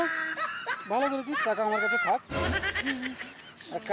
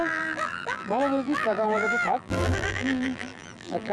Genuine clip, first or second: first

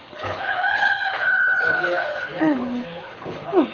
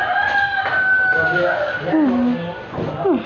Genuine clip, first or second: second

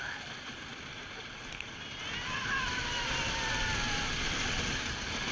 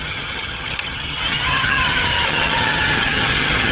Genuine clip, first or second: first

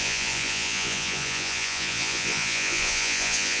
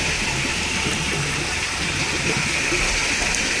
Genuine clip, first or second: second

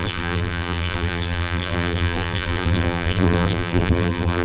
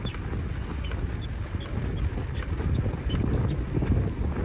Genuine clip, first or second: second